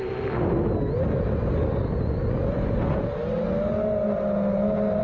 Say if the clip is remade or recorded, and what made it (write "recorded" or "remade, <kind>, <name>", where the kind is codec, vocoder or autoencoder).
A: recorded